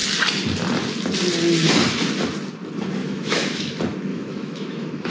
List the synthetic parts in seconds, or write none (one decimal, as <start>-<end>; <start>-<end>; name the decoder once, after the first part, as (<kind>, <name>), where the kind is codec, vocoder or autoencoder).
3.0-3.6 (autoencoder, DAC-VAE); 4.1-5.1